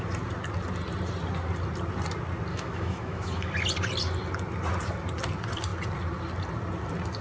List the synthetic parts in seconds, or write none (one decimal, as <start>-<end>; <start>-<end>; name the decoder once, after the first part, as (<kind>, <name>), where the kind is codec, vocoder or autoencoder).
2.5-3.5 (autoencoder, DAC-VAE)